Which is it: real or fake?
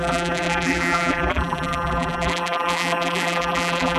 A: fake